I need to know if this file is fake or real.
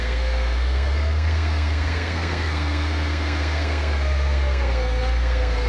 fake